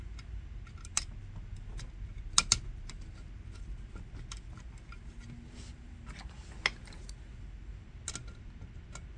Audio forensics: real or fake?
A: real